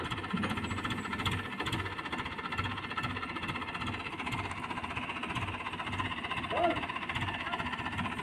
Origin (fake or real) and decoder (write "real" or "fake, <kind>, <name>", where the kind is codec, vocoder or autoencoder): real